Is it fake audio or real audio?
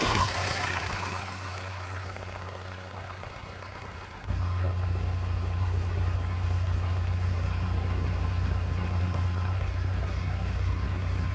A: fake